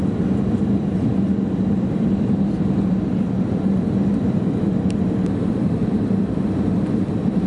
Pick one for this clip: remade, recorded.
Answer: remade